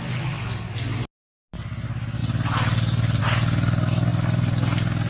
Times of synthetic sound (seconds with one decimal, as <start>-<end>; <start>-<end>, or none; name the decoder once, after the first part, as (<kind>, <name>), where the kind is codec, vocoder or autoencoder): none